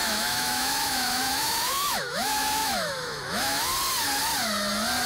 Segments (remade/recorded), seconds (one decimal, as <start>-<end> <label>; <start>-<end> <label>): 0.0-3.7 remade; 3.7-5.1 recorded